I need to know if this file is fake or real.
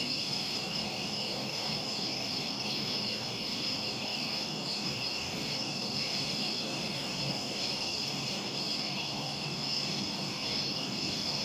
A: fake